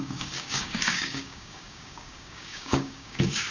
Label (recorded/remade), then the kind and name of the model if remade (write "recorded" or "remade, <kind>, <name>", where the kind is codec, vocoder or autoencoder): remade, codec, DAC